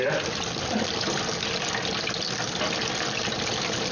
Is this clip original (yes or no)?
yes